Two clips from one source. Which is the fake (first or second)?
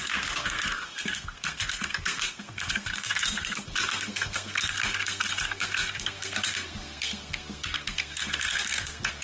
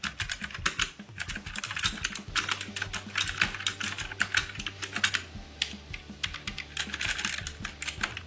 first